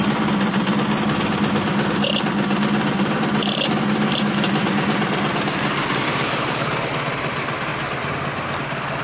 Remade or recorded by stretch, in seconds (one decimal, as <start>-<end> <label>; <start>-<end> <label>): 0.0-9.0 recorded